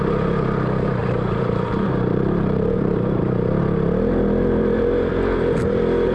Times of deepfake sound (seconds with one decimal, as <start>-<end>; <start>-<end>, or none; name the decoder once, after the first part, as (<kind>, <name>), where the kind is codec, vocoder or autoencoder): 1.0-3.6 (vocoder, BigVGAN v2)